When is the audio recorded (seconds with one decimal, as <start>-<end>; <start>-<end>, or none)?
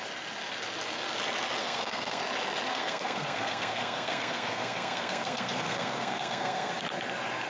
0.0-1.6; 2.2-2.7; 6.7-7.5